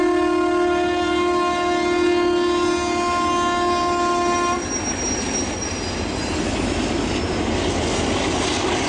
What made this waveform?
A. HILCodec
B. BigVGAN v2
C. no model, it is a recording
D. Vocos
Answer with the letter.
C